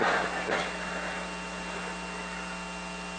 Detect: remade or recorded recorded